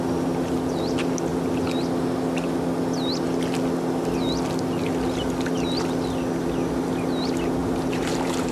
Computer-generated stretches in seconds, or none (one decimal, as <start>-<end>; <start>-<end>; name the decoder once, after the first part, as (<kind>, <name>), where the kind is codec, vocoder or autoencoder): 7.6-8.5 (vocoder, BigVGAN v2)